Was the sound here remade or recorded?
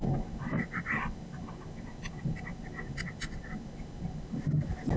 recorded